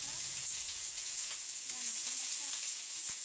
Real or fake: fake